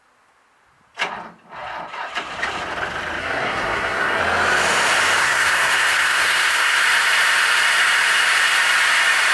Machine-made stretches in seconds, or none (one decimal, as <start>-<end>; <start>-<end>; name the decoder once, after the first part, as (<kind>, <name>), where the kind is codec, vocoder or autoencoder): 3.2-4.2 (codec, SNAC); 5.2-6.8